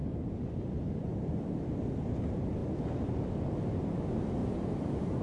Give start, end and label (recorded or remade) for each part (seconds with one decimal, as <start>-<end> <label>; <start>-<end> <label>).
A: 0.0-1.5 remade; 1.5-4.4 recorded; 4.4-5.2 remade